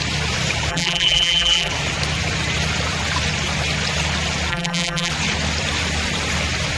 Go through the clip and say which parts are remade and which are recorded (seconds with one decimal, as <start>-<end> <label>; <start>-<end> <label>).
0.0-0.7 recorded; 0.7-1.7 remade; 1.7-4.5 recorded; 4.5-5.1 remade; 5.1-6.8 recorded